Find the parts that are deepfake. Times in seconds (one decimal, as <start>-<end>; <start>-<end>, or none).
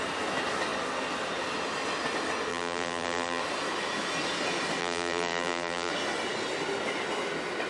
2.5-3.4; 4.8-5.9